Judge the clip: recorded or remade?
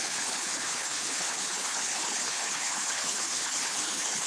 remade